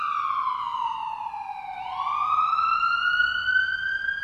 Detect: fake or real real